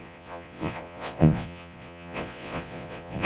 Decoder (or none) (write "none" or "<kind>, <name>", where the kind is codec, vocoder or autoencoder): vocoder, Vocos